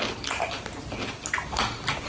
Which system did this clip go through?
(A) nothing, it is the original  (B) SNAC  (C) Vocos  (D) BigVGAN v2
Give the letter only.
A